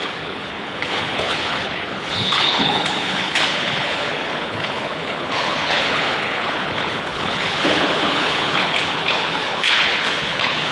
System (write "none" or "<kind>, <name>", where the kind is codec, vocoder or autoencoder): codec, HILCodec